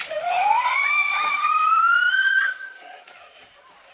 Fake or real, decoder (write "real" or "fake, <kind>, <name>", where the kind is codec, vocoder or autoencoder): fake, vocoder, Vocos